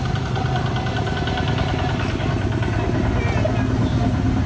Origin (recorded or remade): recorded